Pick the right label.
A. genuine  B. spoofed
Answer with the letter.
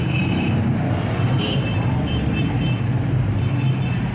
B